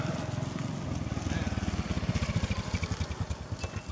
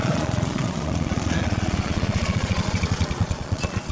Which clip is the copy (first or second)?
second